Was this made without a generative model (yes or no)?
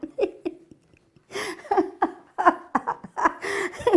yes